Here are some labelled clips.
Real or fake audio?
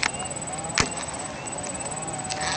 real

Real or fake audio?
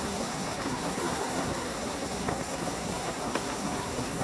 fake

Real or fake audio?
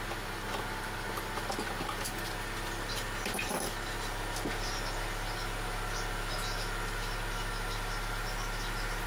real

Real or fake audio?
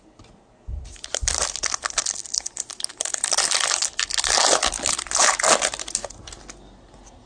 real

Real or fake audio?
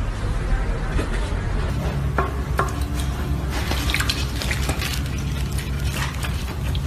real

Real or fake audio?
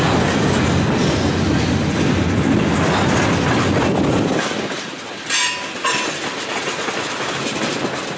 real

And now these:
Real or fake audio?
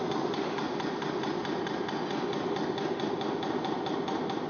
real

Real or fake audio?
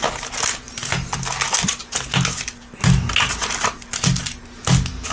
real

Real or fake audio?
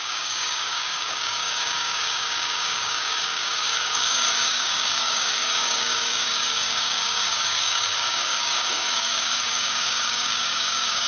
fake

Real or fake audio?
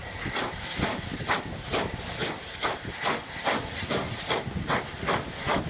real